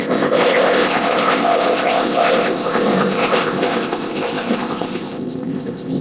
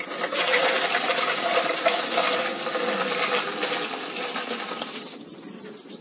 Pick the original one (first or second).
second